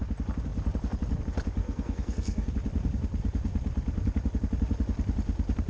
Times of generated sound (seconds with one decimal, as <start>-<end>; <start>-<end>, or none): 1.6-2.5